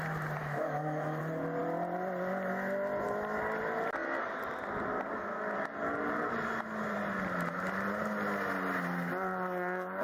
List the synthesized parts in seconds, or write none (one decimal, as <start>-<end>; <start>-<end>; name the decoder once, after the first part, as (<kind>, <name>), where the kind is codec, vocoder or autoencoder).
0.4-1.2 (autoencoder, DAC-VAE)